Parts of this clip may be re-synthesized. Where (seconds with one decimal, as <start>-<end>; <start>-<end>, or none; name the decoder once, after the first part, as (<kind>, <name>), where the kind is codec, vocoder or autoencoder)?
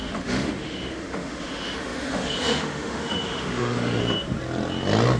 0.0-4.0 (autoencoder, DAC-VAE)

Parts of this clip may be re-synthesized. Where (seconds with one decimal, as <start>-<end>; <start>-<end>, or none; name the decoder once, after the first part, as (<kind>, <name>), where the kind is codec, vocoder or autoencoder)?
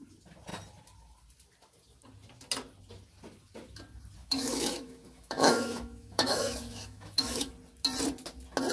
4.2-7.5 (autoencoder, DAC-VAE)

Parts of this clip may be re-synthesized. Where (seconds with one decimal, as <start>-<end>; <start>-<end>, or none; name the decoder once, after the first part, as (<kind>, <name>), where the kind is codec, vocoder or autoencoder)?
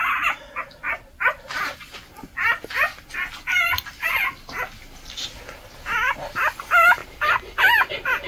none